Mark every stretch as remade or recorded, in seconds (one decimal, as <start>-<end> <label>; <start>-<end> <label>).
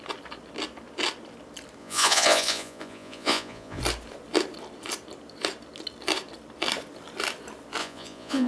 0.0-1.8 recorded; 1.8-3.8 remade; 3.8-7.8 recorded; 7.8-8.5 remade